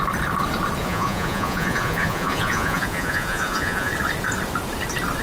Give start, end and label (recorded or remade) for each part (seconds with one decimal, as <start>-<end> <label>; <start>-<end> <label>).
0.0-0.8 recorded; 0.8-3.9 remade; 3.9-5.2 recorded